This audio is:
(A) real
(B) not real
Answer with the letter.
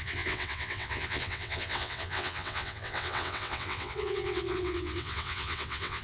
B